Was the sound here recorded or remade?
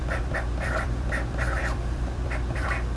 remade